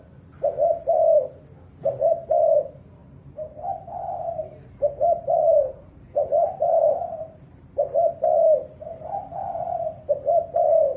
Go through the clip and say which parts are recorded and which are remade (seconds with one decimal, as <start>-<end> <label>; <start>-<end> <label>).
0.0-3.0 recorded; 3.0-7.7 remade; 7.7-8.9 recorded; 8.9-10.1 remade; 10.1-11.0 recorded